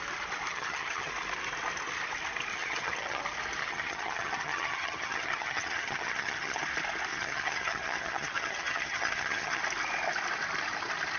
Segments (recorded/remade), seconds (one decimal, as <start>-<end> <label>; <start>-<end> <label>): 0.0-0.5 recorded; 0.5-1.1 remade; 1.1-2.5 recorded; 2.5-3.2 remade; 3.2-3.6 recorded; 3.6-6.6 remade; 6.6-7.1 recorded; 7.1-9.6 remade; 9.6-11.2 recorded